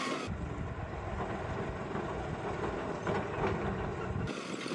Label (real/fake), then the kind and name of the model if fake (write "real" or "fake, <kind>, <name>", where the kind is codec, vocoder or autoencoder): real